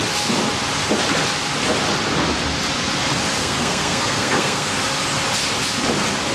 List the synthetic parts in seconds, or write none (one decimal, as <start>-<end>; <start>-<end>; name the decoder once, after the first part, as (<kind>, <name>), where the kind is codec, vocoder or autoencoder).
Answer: 3.4-4.8 (codec, SNAC)